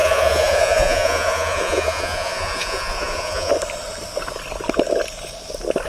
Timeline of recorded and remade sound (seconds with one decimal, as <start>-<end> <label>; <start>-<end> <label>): 0.0-3.5 remade; 3.5-5.9 recorded